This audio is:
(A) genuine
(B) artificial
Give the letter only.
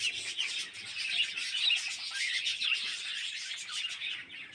A